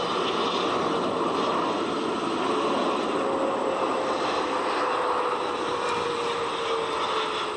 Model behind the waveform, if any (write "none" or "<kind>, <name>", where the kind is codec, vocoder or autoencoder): none